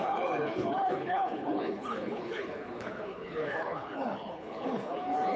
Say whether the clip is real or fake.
fake